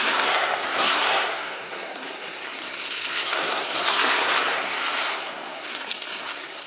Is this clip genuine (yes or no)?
no